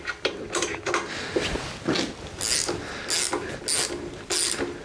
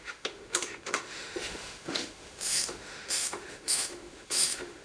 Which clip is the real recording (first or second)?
first